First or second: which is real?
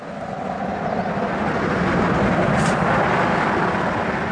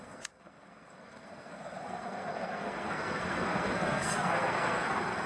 first